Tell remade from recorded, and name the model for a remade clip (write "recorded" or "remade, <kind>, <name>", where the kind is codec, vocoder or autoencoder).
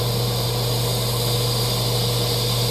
recorded